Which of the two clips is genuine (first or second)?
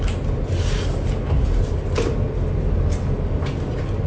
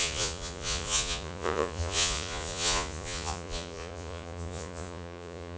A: first